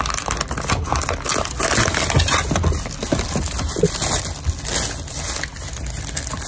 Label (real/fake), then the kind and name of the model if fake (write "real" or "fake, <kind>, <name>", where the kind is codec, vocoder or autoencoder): real